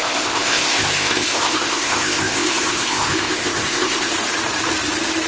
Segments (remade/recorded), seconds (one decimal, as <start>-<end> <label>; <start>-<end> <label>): 0.0-4.1 remade; 4.1-5.3 recorded